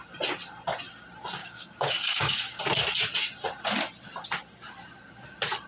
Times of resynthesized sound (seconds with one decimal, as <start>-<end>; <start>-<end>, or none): 1.4-2.6